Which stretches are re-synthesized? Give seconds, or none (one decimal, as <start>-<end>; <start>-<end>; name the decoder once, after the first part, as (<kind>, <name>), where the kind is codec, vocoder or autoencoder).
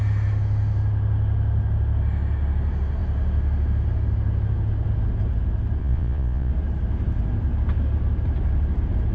5.8-6.5 (vocoder, Vocos)